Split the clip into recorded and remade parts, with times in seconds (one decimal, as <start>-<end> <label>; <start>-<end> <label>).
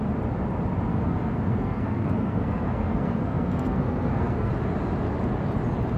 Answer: 0.0-0.9 recorded; 0.9-4.5 remade; 4.5-6.0 recorded